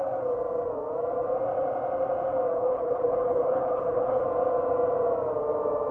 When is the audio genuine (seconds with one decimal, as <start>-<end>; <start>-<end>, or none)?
0.0-2.5; 4.2-5.9